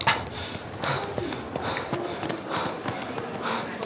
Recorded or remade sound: recorded